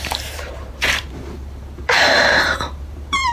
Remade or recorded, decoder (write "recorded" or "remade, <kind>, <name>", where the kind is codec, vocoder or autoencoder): remade, vocoder, BigVGAN v2